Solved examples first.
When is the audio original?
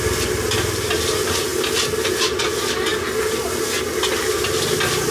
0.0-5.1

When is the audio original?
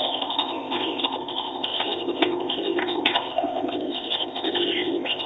none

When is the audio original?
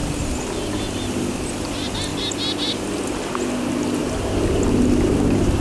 2.1-3.6; 4.0-5.6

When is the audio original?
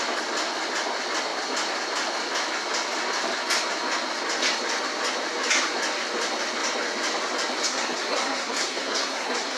0.0-7.7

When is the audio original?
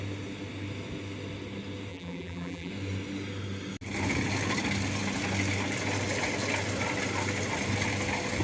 0.0-1.9; 2.7-8.4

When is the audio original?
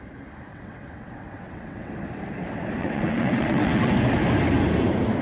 0.0-0.5; 1.9-2.8; 3.9-5.2